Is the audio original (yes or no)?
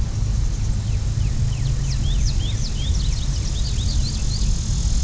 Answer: yes